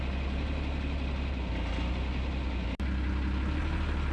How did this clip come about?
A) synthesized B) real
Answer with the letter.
B